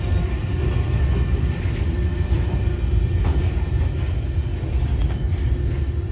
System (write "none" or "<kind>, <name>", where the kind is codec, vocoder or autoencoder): none